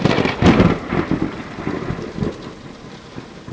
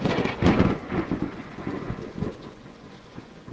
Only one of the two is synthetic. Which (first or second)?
second